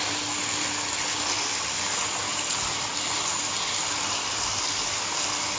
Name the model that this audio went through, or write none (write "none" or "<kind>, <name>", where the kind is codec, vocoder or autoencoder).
none